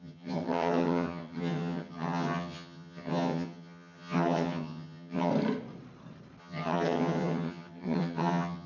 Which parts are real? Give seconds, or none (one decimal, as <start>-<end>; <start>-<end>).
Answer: 5.3-6.4

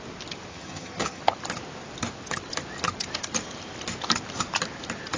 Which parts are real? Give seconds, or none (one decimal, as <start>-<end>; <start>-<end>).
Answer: 0.0-0.5; 1.2-5.2